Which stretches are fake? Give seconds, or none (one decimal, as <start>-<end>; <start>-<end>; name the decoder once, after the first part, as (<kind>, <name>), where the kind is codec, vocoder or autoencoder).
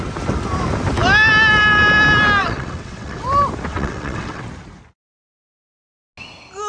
2.4-3.2 (vocoder, WaveNeXt); 3.7-4.4